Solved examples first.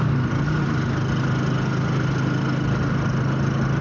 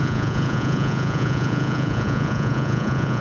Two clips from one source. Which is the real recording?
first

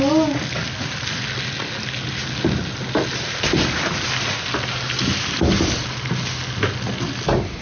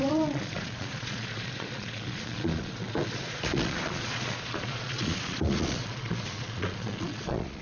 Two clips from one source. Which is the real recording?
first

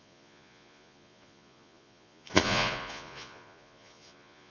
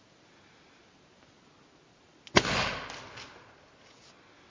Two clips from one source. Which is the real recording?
second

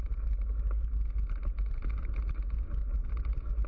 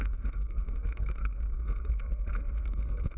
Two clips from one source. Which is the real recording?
first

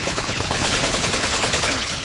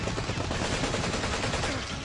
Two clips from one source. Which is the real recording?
second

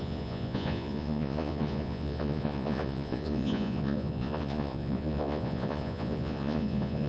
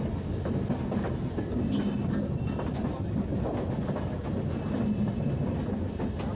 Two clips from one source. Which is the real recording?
second